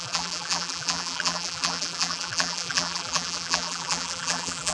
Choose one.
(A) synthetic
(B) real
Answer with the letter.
A